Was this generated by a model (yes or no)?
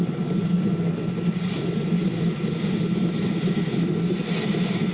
no